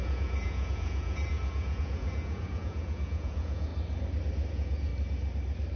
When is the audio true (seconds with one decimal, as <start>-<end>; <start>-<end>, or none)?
3.7-4.5; 4.9-5.8